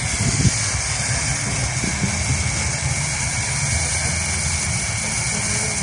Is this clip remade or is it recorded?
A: recorded